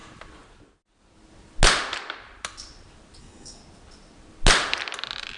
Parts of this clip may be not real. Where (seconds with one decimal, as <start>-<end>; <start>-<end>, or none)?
3.2-3.6